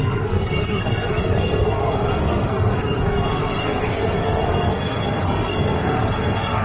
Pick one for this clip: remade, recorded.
remade